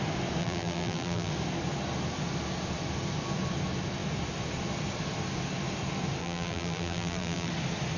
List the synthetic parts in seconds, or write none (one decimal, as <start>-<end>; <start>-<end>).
0.4-1.3; 6.2-7.5